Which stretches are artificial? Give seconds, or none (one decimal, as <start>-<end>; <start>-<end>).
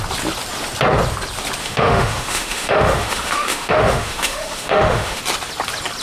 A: 1.6-5.2